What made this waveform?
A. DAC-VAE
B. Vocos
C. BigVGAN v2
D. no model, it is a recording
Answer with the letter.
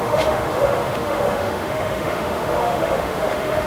A